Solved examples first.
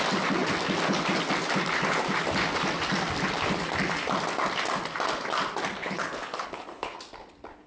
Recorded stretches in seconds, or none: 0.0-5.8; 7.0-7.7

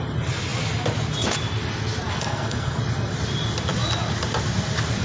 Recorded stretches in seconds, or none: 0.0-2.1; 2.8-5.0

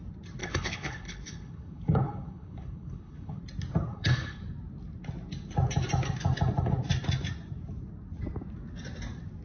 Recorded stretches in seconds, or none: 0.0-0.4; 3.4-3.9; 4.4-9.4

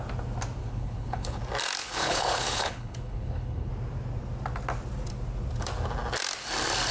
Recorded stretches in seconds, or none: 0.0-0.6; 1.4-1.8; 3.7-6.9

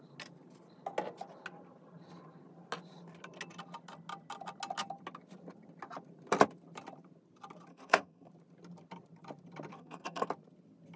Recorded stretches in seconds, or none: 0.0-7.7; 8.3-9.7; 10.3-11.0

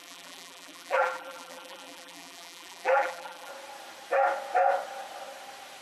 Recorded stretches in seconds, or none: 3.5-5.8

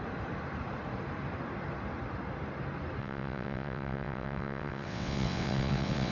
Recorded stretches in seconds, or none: 0.0-3.0

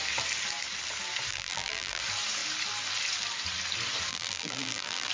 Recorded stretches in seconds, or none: 0.0-1.3; 2.0-4.1